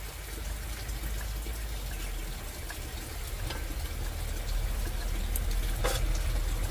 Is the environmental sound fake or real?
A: real